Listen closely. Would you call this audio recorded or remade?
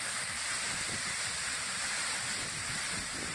recorded